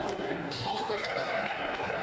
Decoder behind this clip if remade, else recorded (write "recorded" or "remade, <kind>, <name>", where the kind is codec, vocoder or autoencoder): remade, codec, SNAC